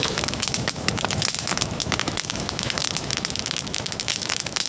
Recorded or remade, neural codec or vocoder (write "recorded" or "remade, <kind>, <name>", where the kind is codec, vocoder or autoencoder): remade, autoencoder, DAC-VAE